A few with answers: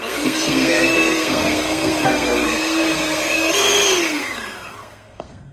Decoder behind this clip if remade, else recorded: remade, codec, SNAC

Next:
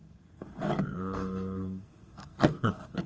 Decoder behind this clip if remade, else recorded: remade, codec, SNAC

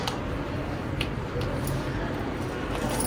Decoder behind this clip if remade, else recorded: recorded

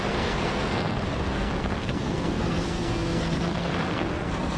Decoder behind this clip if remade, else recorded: remade, codec, SNAC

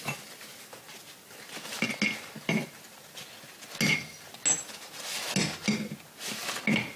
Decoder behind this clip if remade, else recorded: recorded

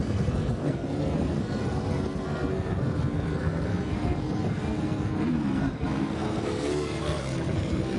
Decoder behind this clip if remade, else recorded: remade, codec, SNAC